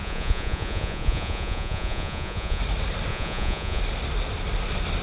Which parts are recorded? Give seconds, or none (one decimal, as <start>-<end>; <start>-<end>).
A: 2.6-3.1; 3.8-5.0